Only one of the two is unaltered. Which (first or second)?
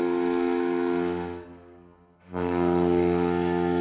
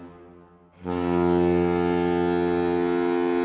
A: second